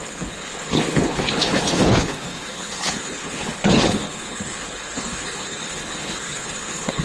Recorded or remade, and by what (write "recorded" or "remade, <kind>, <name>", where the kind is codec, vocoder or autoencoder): remade, codec, HILCodec